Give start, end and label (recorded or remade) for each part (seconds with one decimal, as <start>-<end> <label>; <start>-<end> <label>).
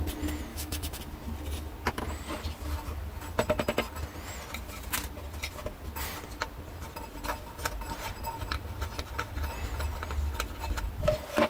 0.0-0.5 recorded; 0.5-1.0 remade; 1.0-11.5 recorded